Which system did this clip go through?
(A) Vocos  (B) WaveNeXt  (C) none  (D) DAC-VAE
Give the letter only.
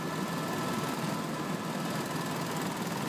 C